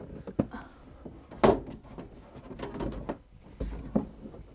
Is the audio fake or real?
real